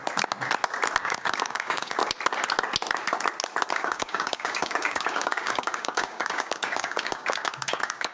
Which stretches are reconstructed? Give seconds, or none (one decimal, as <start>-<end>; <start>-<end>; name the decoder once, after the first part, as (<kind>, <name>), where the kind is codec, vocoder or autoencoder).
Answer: 1.0-2.0 (codec, DAC); 3.7-8.1